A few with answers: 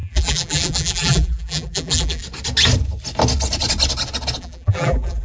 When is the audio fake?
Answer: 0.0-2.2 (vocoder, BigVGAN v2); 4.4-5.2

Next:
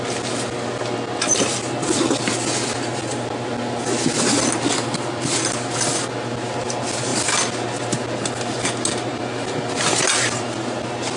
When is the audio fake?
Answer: none

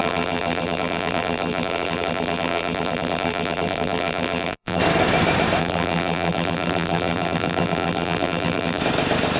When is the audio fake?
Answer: 0.0-4.8 (vocoder, BigVGAN v2); 5.6-8.8

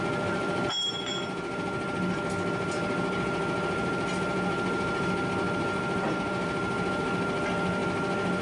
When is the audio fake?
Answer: none

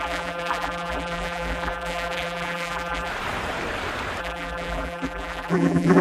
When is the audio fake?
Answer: 0.0-3.1 (vocoder, BigVGAN v2); 4.2-6.0

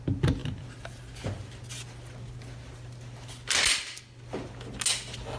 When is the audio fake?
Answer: none